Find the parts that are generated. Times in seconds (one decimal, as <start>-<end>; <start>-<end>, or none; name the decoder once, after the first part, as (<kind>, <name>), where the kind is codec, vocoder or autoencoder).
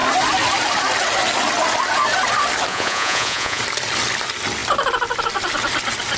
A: 2.7-3.6 (vocoder, Vocos)